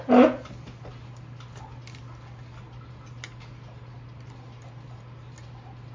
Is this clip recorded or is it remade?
recorded